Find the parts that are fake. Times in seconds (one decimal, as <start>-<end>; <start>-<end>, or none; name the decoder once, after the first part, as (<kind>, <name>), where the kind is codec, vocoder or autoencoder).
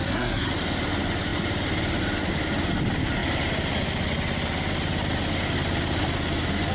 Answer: 0.0-0.5 (codec, SNAC)